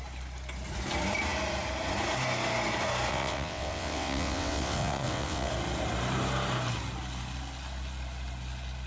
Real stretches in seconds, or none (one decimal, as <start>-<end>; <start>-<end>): 0.0-3.1; 5.5-8.9